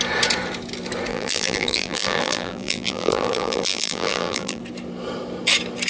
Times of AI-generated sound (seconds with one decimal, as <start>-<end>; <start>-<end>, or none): 1.1-4.6